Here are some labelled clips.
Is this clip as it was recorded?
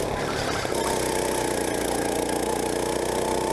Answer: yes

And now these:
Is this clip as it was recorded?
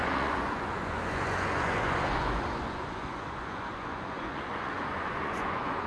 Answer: no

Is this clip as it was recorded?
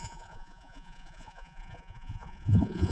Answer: no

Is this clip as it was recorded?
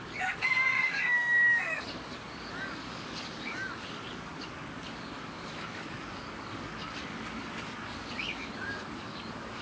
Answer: no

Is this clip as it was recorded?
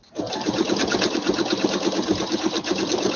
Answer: yes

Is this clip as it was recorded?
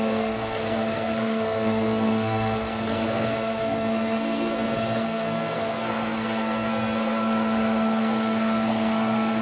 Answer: no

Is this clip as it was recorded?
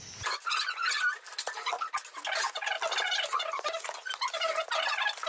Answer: yes